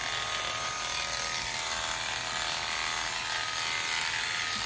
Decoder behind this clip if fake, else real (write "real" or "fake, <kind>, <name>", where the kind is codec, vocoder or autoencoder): real